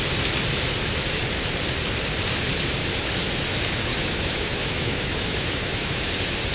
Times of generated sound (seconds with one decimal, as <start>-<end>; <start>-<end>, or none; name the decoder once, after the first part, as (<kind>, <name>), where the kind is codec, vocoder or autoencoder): 3.9-6.1 (autoencoder, DAC-VAE)